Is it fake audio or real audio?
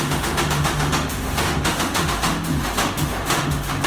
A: fake